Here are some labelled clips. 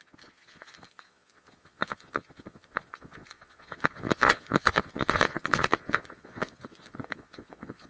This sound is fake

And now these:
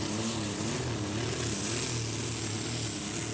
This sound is real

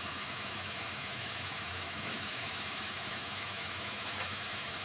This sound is fake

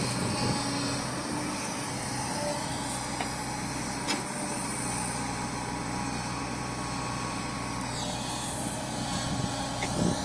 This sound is real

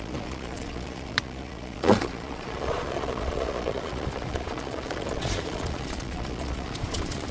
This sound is fake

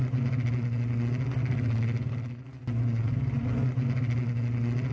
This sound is real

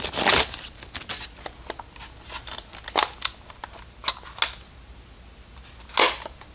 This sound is real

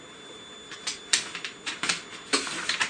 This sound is fake